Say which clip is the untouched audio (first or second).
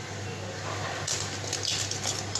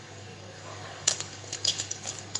first